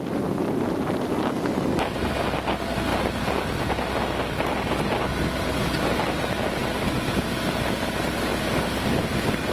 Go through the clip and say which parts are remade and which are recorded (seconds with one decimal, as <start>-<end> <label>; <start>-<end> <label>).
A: 0.0-9.5 recorded